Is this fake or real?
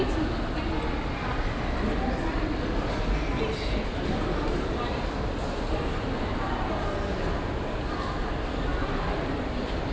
real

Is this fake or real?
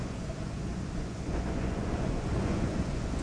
fake